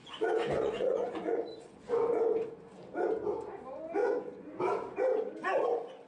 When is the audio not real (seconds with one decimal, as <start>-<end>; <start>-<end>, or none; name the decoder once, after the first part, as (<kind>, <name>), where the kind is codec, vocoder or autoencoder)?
0.0-2.5 (vocoder, Vocos); 4.0-4.6